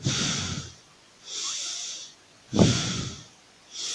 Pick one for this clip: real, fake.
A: fake